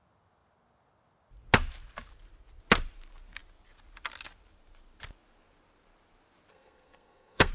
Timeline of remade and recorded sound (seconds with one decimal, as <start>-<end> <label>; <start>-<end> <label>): 0.0-6.5 recorded; 6.5-7.5 remade